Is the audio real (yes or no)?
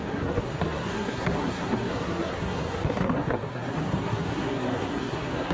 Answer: no